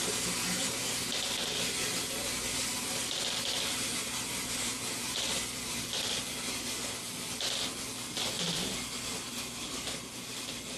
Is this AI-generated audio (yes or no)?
no